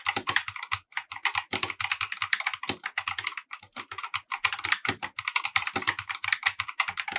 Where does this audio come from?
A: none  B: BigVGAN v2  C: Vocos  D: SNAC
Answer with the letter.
B